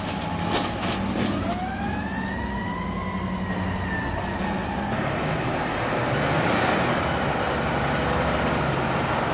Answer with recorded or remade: recorded